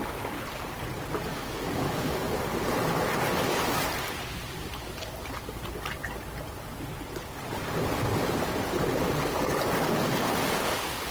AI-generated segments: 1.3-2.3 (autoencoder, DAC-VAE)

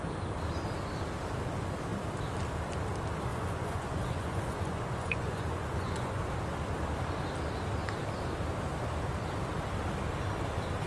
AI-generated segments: 3.3-6.3 (vocoder, Vocos)

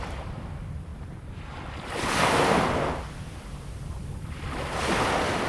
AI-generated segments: none

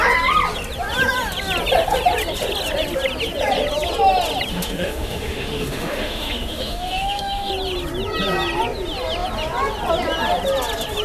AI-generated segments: 4.5-7.5 (autoencoder, DAC-VAE)

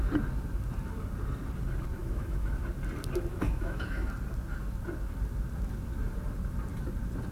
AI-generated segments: 2.0-2.5 (autoencoder, DAC-VAE); 3.3-4.1

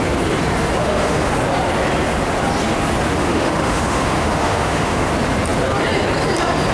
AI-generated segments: 0.8-1.3 (autoencoder, DAC-VAE); 3.2-5.1

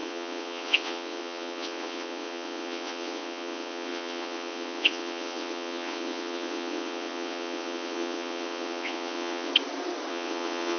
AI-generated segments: 0.0-9.5 (vocoder, WaveNeXt); 10.1-10.8

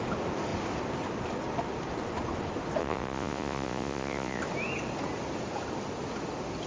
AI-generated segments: 2.8-4.4 (vocoder, Vocos)